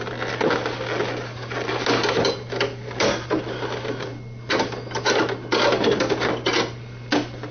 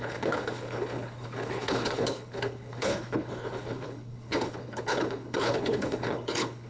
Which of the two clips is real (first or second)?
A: first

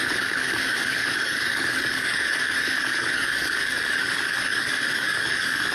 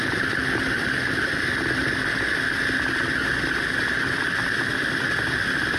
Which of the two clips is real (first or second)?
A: second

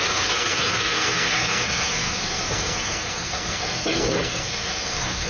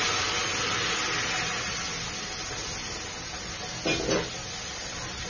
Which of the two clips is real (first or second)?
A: second